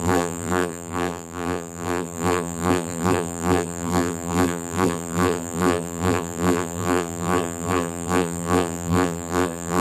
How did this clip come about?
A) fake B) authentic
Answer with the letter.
A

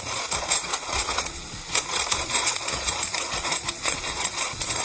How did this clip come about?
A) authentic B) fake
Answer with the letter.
B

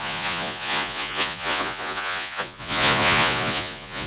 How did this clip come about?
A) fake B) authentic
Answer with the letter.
A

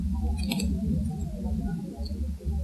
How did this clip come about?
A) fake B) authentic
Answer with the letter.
B